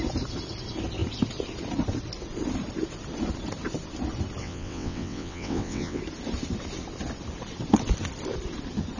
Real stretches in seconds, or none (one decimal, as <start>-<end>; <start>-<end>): 0.0-4.4; 6.0-9.0

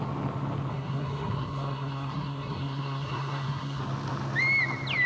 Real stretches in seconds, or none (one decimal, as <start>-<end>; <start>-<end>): 0.0-0.7; 3.8-5.1

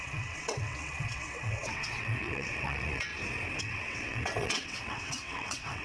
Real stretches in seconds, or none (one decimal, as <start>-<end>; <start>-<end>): 3.1-3.6

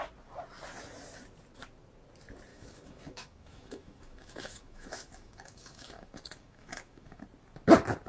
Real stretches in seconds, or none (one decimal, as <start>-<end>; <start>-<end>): 0.0-2.5; 7.2-8.1

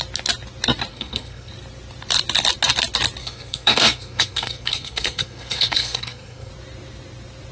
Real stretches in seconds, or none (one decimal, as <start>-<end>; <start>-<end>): 0.0-0.9; 1.5-3.2; 6.5-7.5

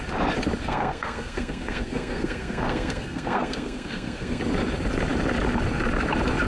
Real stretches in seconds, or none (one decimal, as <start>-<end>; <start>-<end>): 0.0-0.6; 4.4-6.5

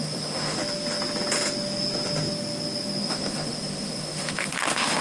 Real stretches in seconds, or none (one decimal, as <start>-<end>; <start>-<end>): 0.6-3.0